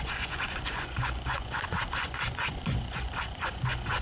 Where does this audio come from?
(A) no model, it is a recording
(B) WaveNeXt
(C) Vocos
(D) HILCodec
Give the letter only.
C